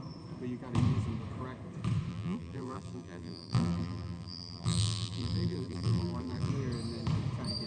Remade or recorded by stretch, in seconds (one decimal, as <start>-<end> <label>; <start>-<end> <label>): 0.0-2.1 recorded; 2.1-6.5 remade; 6.5-7.7 recorded